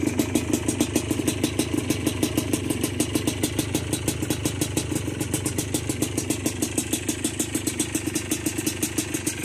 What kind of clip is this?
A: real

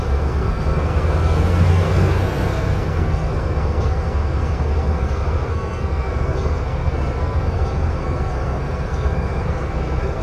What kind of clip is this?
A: fake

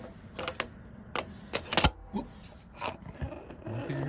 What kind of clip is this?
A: real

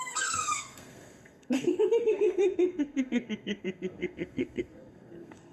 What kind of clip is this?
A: fake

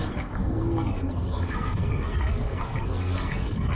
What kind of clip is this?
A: fake